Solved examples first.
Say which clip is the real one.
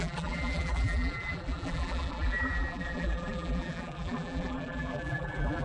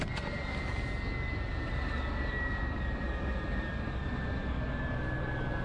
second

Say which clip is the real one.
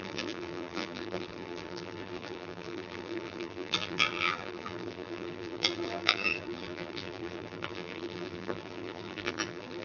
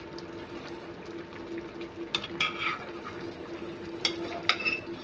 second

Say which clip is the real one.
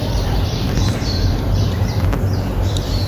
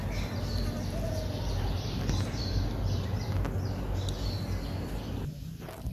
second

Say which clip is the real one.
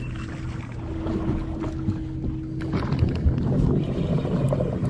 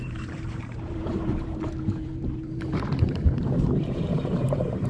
first